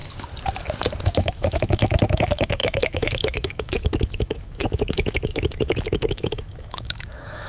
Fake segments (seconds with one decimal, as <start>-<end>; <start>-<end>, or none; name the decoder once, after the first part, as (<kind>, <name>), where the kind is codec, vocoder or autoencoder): 1.0-7.5 (autoencoder, DAC-VAE)

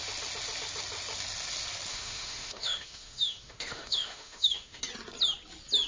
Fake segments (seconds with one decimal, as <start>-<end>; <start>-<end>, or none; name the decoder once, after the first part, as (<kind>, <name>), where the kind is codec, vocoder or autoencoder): 1.9-4.8 (autoencoder, DAC-VAE)